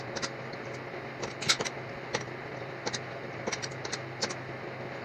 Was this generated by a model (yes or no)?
no